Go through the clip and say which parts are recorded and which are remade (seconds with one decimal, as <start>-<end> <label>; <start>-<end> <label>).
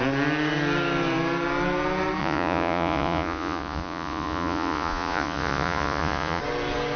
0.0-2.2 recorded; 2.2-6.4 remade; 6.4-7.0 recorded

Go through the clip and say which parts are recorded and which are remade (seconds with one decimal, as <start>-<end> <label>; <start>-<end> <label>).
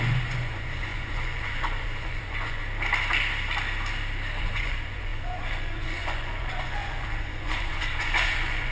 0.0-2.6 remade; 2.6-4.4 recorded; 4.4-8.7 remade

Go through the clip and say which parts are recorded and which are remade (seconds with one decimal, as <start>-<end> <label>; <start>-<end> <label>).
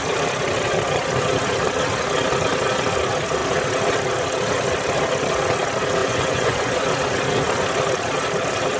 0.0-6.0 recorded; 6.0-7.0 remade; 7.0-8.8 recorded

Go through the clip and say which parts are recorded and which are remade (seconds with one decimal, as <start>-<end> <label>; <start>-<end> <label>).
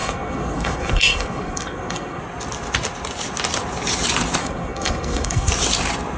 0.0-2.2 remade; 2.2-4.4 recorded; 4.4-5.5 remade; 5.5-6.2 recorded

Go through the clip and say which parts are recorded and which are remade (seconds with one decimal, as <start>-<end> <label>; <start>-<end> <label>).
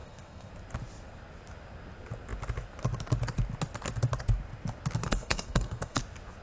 0.0-0.5 remade; 0.5-5.0 recorded; 5.0-6.0 remade; 6.0-6.4 recorded